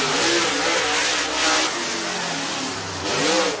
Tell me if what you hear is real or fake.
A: real